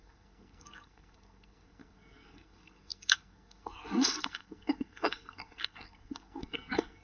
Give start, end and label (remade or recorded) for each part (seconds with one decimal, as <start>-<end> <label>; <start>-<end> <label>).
0.0-7.0 remade